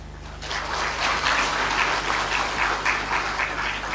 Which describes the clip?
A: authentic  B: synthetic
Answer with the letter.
A